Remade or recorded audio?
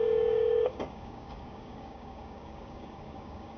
remade